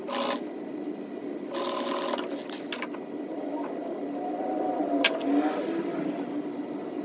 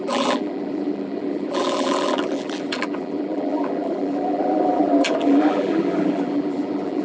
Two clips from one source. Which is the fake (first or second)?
second